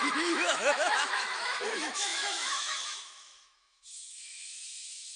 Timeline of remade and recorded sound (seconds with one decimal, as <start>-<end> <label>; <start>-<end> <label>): 0.0-5.2 remade